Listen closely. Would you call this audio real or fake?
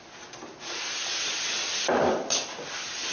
real